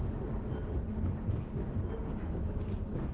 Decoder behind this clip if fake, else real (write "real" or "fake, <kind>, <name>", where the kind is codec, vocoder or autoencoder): real